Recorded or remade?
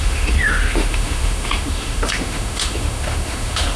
remade